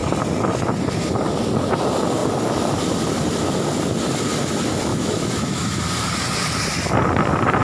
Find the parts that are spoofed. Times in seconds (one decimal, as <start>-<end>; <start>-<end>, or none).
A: 4.9-5.8